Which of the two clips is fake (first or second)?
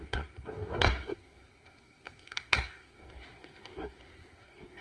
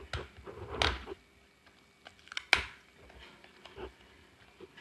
first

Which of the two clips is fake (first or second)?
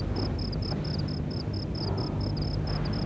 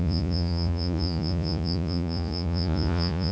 second